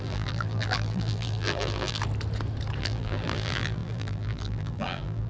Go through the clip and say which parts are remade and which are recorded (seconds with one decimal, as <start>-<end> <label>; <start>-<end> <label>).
0.0-2.0 remade; 2.0-2.8 recorded; 2.8-5.3 remade